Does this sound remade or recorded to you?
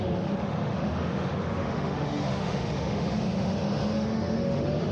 remade